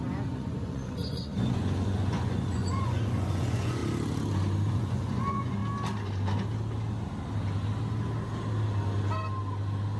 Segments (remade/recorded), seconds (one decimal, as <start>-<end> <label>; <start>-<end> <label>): 0.0-3.8 remade; 3.8-4.7 recorded; 4.7-5.6 remade; 5.6-10.0 recorded